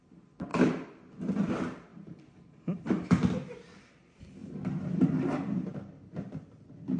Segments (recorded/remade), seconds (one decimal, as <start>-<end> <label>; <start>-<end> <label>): 0.0-0.5 recorded; 0.5-1.1 remade; 1.1-4.4 recorded; 4.4-6.5 remade; 6.5-7.0 recorded